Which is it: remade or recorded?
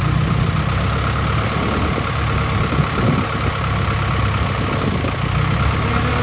recorded